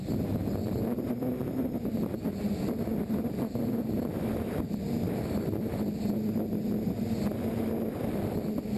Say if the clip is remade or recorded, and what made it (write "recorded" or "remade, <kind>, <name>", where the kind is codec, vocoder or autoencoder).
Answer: recorded